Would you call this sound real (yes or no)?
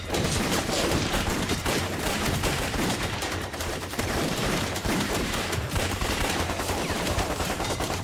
no